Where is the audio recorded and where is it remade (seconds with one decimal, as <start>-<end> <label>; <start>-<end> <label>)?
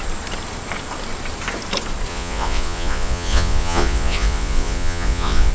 0.0-2.1 recorded; 2.1-5.5 remade